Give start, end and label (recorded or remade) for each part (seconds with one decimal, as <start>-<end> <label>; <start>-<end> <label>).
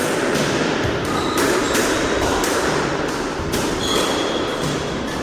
0.0-3.1 remade; 3.1-5.2 recorded